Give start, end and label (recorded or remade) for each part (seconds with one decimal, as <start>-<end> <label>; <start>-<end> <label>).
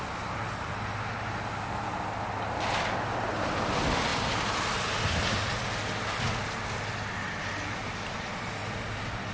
0.0-9.3 recorded